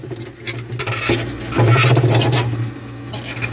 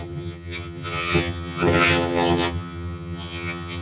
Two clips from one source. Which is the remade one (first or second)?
second